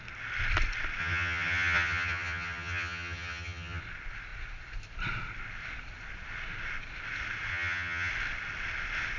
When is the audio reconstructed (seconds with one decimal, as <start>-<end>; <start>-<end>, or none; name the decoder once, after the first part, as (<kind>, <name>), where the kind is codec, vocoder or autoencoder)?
1.0-3.8 (vocoder, HiFi-GAN); 7.5-8.1